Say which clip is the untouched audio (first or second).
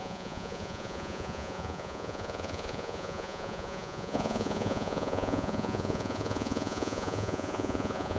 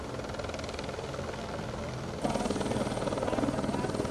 second